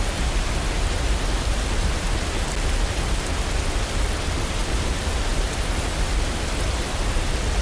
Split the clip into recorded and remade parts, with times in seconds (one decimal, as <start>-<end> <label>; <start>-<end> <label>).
0.0-4.6 recorded; 4.6-6.8 remade; 6.8-7.6 recorded